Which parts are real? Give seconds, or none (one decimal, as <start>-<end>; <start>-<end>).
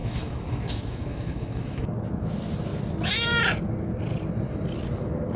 1.8-5.4